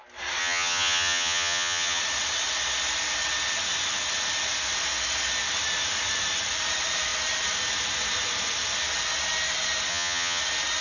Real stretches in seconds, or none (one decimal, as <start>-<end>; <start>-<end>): 0.0-0.4; 2.0-9.9; 10.4-10.8